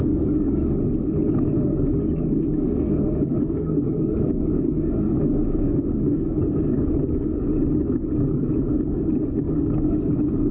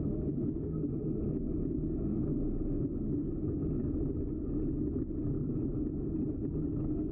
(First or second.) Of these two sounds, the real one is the second